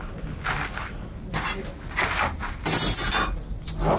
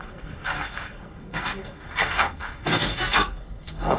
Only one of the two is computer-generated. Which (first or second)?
second